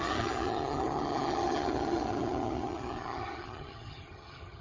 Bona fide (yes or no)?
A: no